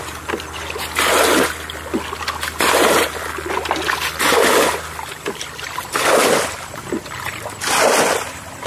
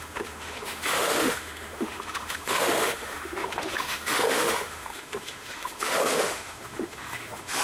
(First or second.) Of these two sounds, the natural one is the first